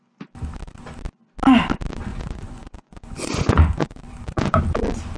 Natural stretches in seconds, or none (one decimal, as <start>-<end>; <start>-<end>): 0.0-2.1; 4.6-5.2